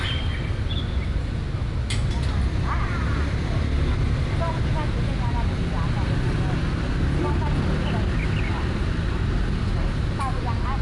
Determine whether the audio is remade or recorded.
recorded